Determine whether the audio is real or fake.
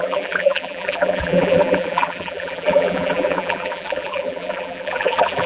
fake